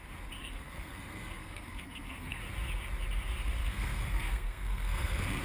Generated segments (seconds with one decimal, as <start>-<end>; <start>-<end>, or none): 0.4-2.4; 3.6-5.4